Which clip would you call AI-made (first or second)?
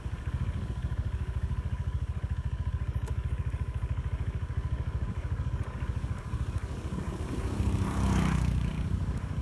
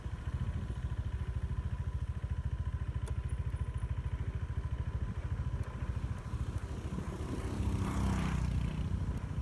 first